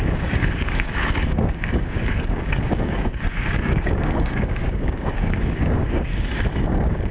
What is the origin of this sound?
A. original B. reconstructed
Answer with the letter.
B